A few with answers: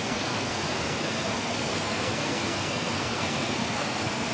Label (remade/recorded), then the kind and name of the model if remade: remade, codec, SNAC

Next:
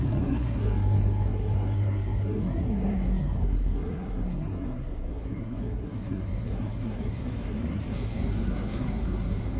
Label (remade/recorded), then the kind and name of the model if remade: remade, codec, SNAC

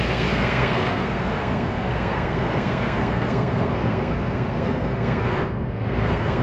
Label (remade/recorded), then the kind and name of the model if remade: remade, codec, SNAC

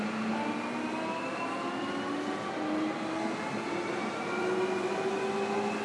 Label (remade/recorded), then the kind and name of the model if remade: recorded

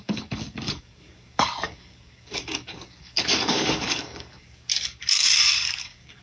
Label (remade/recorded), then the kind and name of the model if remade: remade, codec, DAC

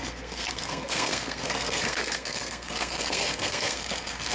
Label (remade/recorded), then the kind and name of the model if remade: remade, codec, SNAC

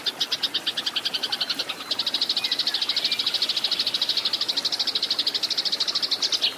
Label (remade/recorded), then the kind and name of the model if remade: recorded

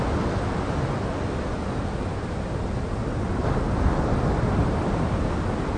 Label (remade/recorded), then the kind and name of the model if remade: recorded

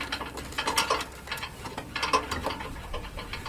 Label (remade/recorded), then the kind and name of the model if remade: recorded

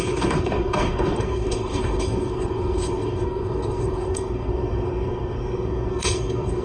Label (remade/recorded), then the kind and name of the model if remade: remade, codec, SNAC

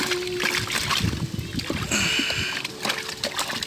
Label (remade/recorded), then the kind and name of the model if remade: recorded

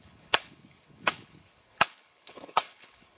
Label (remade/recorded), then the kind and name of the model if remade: remade, codec, HILCodec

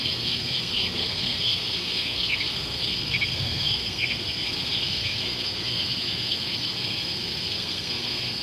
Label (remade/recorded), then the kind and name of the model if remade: remade, codec, SNAC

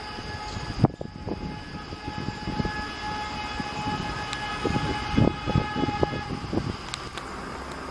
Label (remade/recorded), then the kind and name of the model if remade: recorded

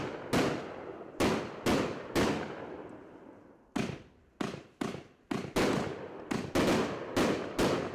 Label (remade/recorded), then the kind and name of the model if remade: recorded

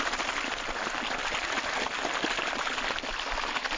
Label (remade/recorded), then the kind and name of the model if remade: recorded